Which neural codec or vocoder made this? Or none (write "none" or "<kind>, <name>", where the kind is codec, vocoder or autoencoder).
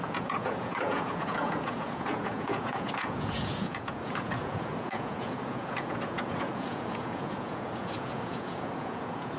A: vocoder, Vocos